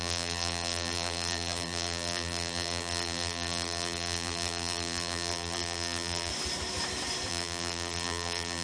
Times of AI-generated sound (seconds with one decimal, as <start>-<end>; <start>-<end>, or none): 0.0-6.3; 7.3-8.6